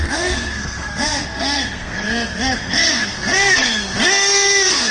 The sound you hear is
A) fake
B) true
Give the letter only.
A